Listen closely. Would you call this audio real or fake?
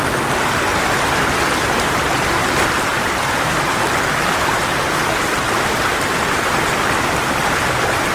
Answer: real